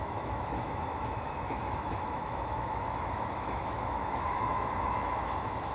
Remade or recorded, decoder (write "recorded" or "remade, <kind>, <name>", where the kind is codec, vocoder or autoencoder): remade, autoencoder, DAC-VAE